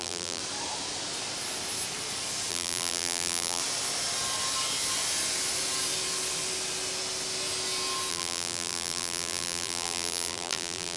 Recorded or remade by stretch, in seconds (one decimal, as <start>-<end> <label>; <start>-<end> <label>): 0.0-0.4 remade; 0.4-2.5 recorded; 2.5-3.6 remade; 3.6-8.1 recorded; 8.1-11.0 remade